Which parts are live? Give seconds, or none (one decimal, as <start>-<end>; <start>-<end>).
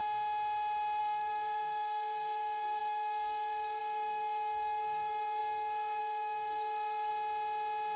0.0-1.0; 7.1-8.0